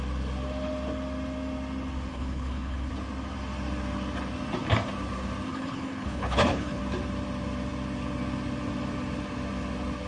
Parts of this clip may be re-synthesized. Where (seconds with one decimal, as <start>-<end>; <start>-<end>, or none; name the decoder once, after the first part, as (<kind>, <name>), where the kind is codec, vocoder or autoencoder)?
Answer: 2.1-2.9 (codec, HILCodec); 5.5-6.8